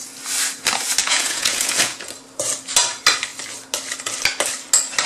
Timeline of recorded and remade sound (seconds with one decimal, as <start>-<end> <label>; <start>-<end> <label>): 0.0-1.0 recorded; 1.0-2.1 remade; 2.1-5.1 recorded